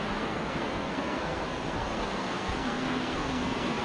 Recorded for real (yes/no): no